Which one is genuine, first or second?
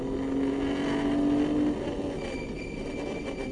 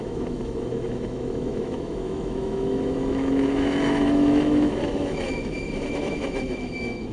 first